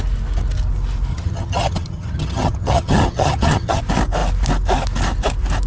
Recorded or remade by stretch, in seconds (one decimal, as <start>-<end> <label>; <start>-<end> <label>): 0.0-1.1 recorded; 1.1-3.8 remade; 3.8-5.7 recorded